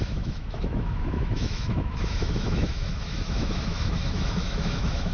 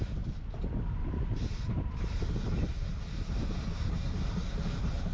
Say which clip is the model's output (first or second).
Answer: first